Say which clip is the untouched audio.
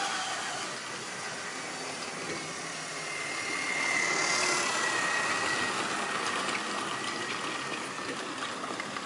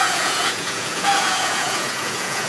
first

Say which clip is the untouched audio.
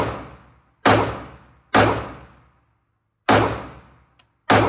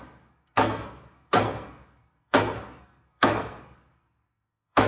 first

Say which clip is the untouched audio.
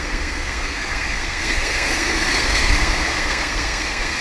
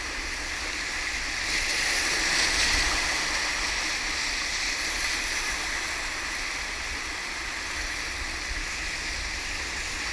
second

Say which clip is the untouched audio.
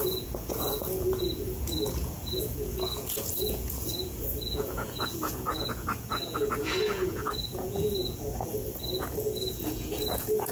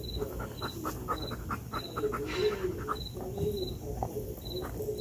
second